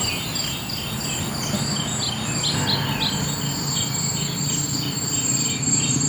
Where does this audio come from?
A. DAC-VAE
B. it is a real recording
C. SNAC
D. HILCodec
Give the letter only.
B